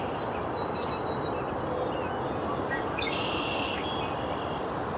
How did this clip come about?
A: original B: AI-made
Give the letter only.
A